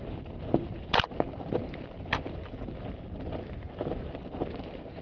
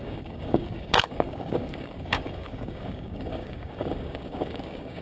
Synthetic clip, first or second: second